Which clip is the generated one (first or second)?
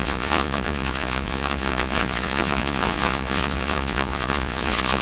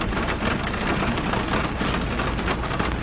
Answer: first